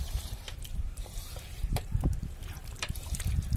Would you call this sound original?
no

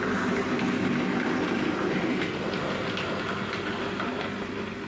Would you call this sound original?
yes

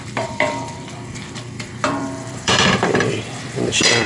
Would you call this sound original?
no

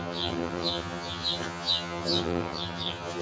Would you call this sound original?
no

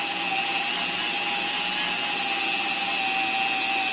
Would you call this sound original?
yes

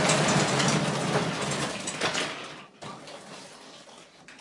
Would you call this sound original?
yes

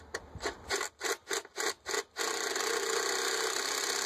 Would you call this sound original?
yes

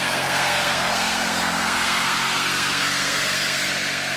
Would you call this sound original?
no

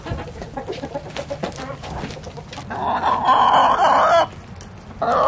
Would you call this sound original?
yes